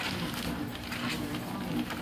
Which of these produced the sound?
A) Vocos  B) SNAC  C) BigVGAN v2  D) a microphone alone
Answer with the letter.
D